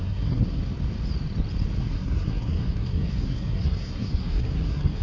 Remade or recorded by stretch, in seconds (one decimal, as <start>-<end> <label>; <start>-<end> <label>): 0.0-0.6 remade; 0.6-1.8 recorded; 1.8-5.0 remade